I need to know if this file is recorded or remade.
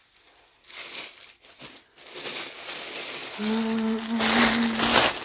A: recorded